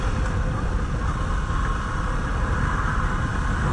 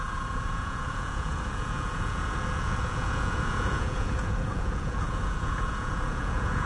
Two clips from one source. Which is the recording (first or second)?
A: first